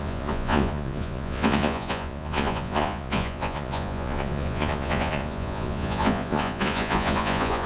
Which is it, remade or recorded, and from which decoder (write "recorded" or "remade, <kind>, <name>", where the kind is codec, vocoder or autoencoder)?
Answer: remade, vocoder, Vocos